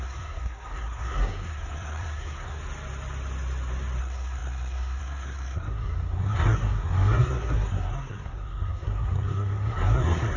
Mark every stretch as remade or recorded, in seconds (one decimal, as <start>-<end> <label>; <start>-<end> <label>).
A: 0.0-2.6 remade; 2.6-4.0 recorded; 4.0-10.4 remade